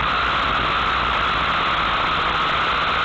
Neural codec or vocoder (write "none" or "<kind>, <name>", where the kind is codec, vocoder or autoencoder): none